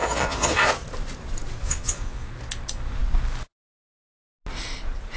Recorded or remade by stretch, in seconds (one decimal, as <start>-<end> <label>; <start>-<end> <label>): 0.0-0.7 remade; 0.7-1.6 recorded; 1.6-2.3 remade; 2.3-5.2 recorded